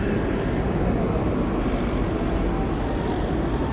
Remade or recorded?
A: recorded